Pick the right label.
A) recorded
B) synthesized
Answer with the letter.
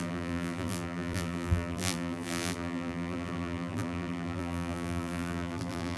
B